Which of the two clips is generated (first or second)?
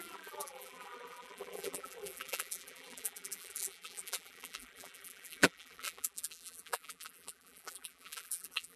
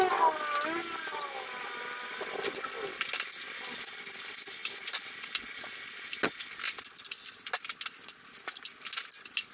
first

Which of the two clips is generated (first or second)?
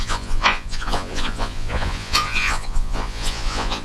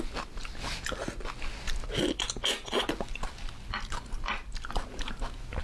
first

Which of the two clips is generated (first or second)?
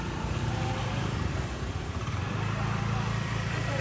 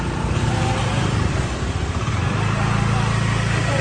first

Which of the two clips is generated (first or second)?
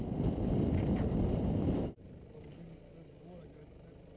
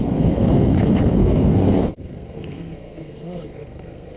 second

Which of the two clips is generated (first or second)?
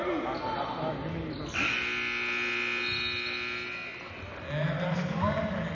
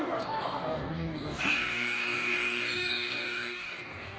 second